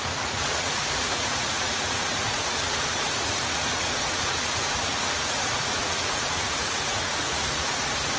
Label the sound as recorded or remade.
remade